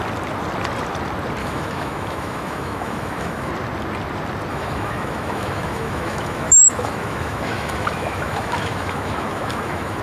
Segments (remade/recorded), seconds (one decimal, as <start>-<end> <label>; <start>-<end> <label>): 0.0-1.4 recorded; 1.4-3.5 remade; 3.5-4.5 recorded; 4.5-10.0 remade

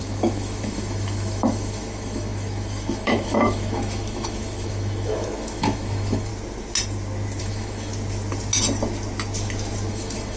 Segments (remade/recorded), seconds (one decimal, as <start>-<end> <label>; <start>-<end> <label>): 0.0-6.3 remade; 6.3-7.4 recorded; 7.4-7.9 remade; 7.9-9.9 recorded; 9.9-10.4 remade

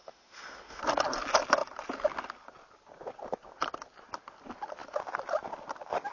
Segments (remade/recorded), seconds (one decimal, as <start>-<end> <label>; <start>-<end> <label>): 0.0-0.8 remade; 0.8-6.1 recorded

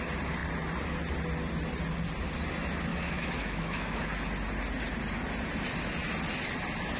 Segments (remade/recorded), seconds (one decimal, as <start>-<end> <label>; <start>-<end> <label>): 0.0-2.9 recorded; 2.9-4.1 remade; 4.1-7.0 recorded

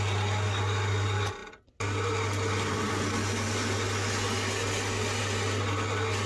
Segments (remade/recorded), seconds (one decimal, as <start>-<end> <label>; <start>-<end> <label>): 0.0-6.3 recorded

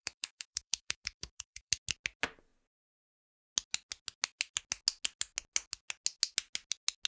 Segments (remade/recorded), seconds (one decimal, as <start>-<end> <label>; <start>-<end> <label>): 0.0-1.7 remade; 1.7-7.1 recorded

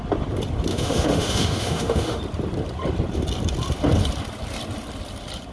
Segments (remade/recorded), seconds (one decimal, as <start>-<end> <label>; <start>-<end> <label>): 0.0-0.7 recorded; 0.7-2.2 remade; 2.2-5.5 recorded

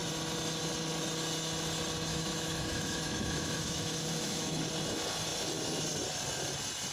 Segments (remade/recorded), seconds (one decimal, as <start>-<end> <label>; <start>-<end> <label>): 0.0-2.1 recorded; 2.1-4.6 remade; 4.6-6.9 recorded